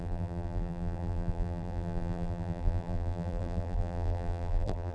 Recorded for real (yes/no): no